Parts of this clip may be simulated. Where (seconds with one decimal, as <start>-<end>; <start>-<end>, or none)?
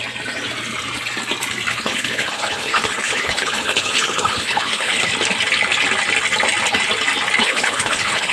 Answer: 1.7-5.1; 7.4-8.3